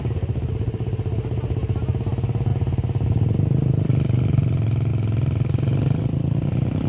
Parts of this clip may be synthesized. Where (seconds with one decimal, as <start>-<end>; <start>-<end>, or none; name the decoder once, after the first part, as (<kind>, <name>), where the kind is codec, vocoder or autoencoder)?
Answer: none